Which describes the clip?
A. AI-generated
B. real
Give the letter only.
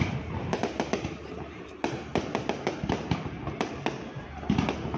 B